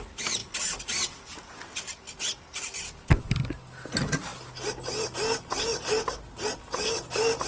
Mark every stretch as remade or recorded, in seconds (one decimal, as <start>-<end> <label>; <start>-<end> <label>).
0.0-7.5 recorded